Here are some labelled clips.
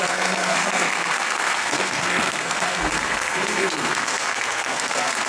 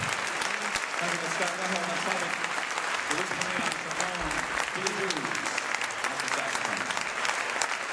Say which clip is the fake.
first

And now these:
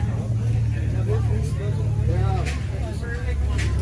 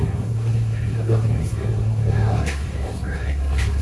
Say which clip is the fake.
second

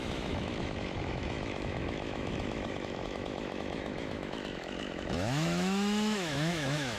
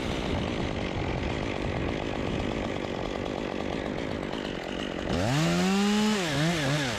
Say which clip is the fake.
first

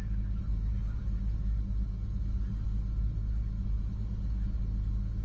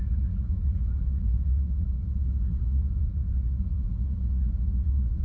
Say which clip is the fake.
second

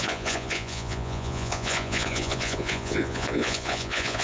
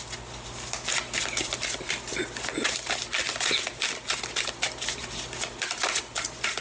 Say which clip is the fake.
first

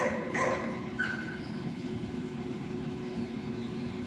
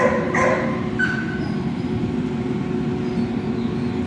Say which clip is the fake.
first